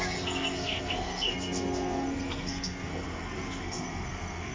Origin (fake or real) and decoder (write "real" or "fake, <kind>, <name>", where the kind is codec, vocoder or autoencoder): fake, codec, SNAC